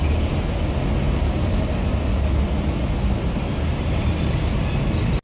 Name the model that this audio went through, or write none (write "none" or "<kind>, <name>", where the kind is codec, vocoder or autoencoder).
none